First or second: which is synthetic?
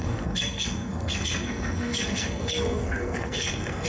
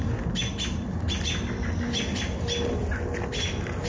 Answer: first